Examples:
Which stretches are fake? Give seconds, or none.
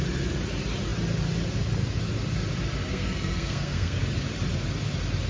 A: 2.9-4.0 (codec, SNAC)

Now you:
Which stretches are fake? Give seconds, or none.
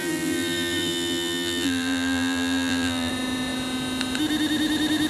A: 0.0-3.1 (vocoder, BigVGAN v2)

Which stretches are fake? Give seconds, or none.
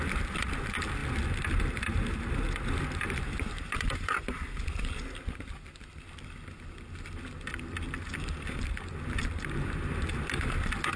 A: none